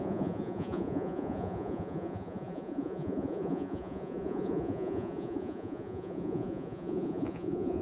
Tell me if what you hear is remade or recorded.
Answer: remade